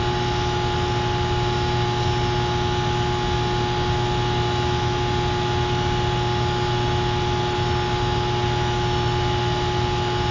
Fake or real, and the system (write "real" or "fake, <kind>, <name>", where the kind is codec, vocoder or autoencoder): real